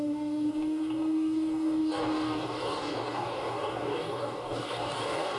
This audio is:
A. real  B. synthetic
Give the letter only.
B